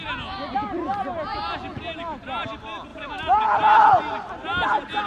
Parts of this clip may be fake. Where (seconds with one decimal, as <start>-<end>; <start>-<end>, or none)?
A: 2.9-4.0

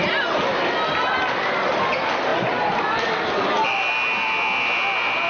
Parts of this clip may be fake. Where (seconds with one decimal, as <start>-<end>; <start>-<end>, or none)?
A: none

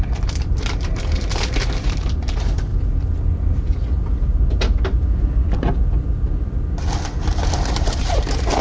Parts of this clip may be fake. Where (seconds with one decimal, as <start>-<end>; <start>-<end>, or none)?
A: 0.0-2.7; 7.0-8.6